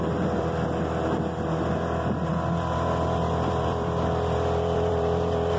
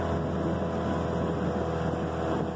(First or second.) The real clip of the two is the second